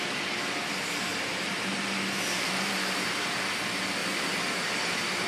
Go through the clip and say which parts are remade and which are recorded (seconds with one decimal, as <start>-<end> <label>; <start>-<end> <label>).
0.0-1.1 recorded; 1.1-2.7 remade; 2.7-4.0 recorded; 4.0-4.5 remade; 4.5-5.3 recorded